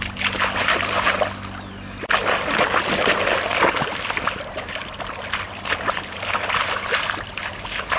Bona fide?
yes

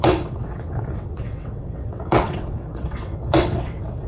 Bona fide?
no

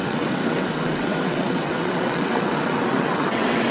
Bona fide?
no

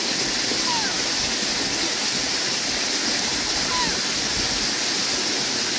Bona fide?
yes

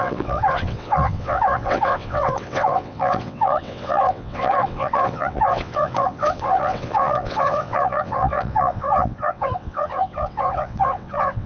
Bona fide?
no